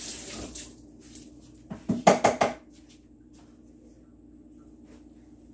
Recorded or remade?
recorded